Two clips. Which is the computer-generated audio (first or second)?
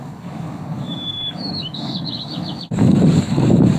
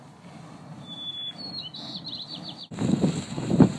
first